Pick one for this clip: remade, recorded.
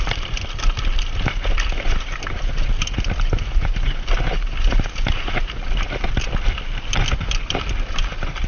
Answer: recorded